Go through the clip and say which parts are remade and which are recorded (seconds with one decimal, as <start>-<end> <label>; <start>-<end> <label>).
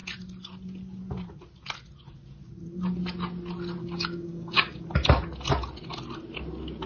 0.0-3.8 recorded; 3.8-4.8 remade; 4.8-6.9 recorded